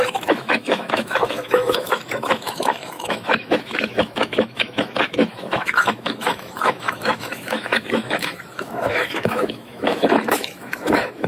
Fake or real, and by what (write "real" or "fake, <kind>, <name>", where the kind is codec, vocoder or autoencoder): fake, autoencoder, DAC-VAE